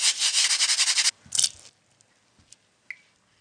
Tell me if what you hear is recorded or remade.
recorded